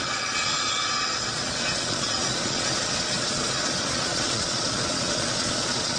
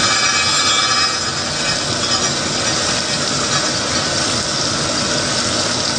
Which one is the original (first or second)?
second